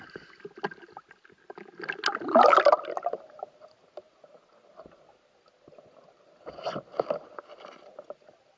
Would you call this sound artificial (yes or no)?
no